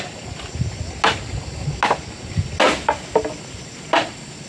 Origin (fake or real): real